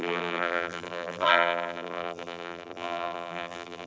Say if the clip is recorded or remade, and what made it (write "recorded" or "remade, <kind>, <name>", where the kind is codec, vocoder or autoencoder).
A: remade, vocoder, BigVGAN v2